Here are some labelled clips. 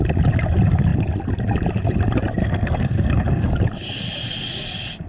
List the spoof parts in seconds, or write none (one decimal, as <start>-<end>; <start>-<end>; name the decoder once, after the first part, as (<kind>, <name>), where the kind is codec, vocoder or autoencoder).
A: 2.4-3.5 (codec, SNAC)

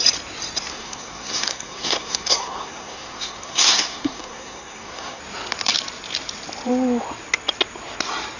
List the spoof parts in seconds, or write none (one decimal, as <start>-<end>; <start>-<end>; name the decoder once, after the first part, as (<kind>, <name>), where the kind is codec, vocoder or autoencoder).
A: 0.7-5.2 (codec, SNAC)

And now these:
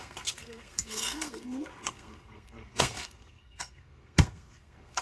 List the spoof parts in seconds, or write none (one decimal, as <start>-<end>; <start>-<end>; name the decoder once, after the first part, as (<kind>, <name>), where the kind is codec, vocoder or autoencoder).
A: 0.0-5.0 (codec, SNAC)

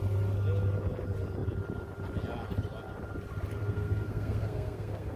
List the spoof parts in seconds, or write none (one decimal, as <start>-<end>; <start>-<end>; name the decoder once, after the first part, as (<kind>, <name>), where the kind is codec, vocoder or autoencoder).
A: 3.6-5.2 (codec, SNAC)